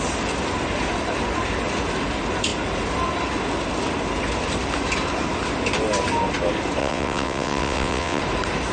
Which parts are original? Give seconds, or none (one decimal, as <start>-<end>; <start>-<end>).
0.0-6.8; 8.2-8.7